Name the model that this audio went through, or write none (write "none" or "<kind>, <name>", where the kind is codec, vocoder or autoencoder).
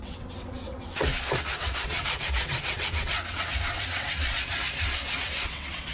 vocoder, WaveNeXt